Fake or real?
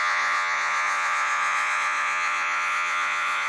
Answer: fake